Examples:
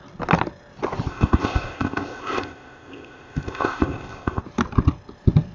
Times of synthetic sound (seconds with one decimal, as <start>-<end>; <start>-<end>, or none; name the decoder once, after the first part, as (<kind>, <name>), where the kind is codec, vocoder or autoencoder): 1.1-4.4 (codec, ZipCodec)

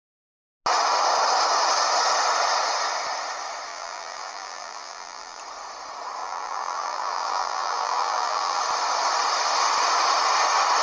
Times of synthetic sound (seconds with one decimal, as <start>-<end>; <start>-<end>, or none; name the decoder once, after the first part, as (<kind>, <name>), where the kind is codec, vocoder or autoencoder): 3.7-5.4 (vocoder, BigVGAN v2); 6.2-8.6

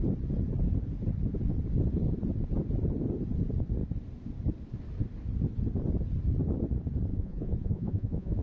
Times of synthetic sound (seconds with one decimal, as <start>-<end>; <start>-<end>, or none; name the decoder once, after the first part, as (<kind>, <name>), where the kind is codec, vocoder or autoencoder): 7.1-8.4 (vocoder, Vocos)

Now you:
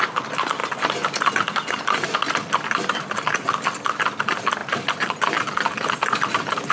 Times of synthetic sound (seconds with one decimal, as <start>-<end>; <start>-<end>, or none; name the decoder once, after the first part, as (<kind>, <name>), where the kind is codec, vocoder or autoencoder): none

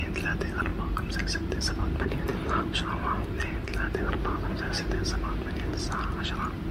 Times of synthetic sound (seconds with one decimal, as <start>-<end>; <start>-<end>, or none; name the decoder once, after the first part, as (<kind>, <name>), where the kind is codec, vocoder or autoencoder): 0.7-1.6 (vocoder, BigVGAN v2)